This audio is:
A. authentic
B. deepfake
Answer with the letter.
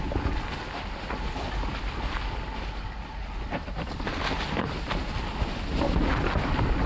A